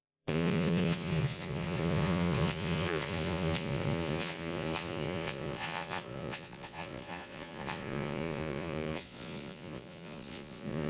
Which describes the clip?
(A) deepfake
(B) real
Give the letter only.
A